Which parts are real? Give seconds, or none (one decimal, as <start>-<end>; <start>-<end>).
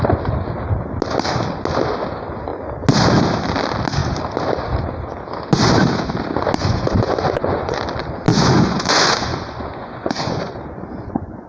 0.0-6.6; 7.8-8.3